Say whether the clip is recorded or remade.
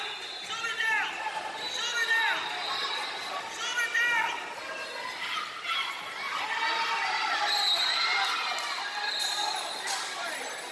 recorded